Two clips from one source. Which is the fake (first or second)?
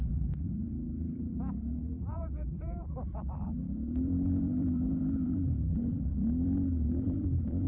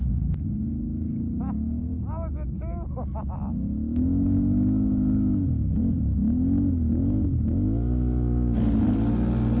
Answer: first